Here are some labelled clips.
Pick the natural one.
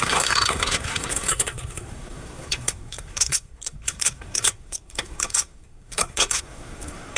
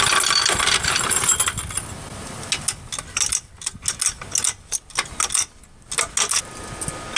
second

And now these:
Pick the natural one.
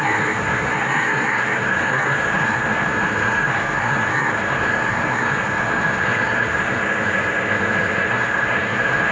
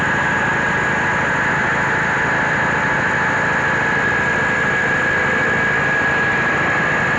second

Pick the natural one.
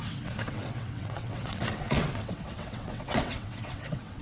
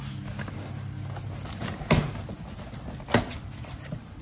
second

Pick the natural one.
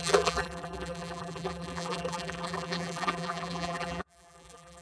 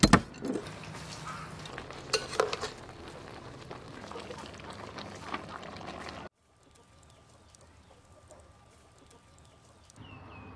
second